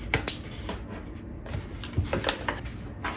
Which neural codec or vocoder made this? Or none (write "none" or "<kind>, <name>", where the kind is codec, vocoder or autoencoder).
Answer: none